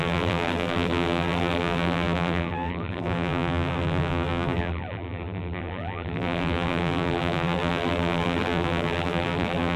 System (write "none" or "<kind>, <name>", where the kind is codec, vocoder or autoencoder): vocoder, BigVGAN v2